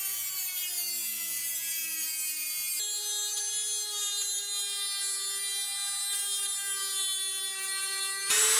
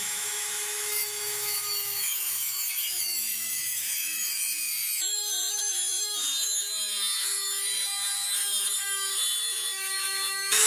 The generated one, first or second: second